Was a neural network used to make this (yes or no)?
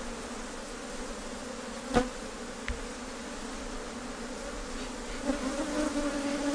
no